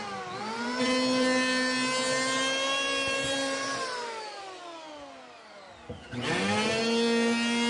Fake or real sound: real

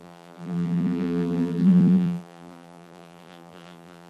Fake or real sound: fake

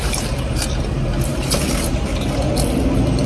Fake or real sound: real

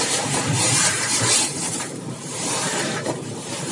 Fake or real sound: fake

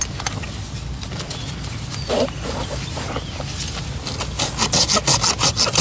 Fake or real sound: real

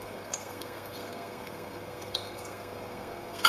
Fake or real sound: fake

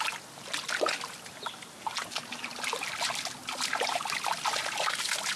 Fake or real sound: real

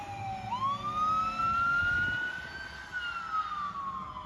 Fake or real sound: real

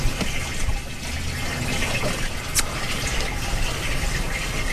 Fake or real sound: real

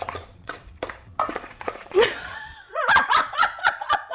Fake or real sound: fake